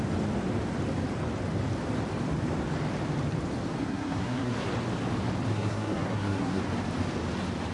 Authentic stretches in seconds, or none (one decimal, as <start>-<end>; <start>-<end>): 0.0-3.8; 4.7-5.5; 6.6-7.7